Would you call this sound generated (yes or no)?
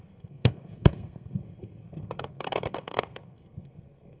yes